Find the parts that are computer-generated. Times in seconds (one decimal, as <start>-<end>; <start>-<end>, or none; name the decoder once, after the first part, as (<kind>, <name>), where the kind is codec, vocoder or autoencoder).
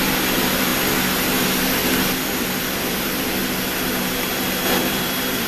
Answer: 0.0-0.7 (vocoder, BigVGAN v2); 2.1-3.4; 4.8-5.5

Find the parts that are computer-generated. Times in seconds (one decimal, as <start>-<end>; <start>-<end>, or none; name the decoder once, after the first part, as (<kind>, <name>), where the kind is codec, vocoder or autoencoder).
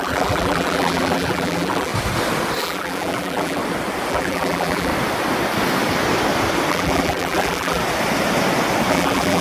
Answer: 0.0-1.9 (vocoder, BigVGAN v2); 2.6-3.6; 4.1-4.9; 6.7-7.8; 8.9-9.4